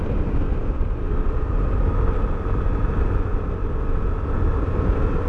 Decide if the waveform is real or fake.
real